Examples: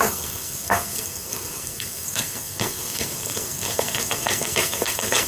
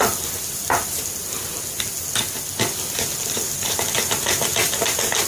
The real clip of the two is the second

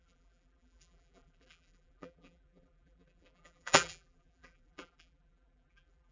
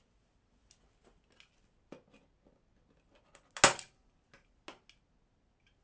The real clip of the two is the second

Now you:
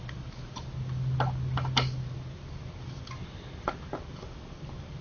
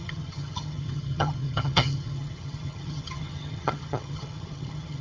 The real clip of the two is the first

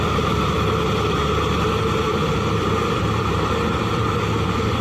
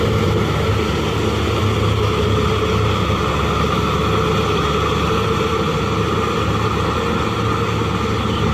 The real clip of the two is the second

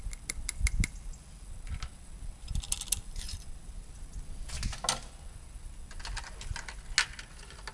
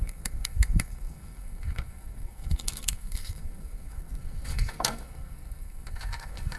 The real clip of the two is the first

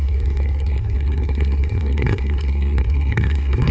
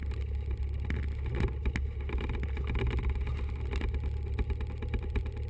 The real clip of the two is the second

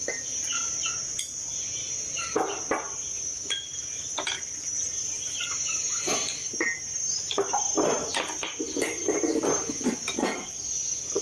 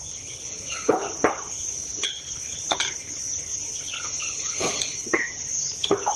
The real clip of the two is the first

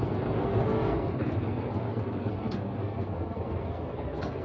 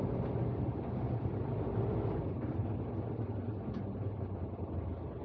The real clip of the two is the second